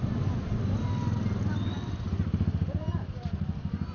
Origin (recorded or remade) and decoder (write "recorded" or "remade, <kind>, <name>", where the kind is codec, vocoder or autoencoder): recorded